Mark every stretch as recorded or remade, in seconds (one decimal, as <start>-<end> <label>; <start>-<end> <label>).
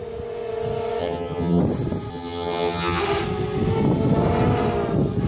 0.0-1.0 recorded; 1.0-1.6 remade; 1.6-2.1 recorded; 2.1-3.0 remade; 3.0-5.3 recorded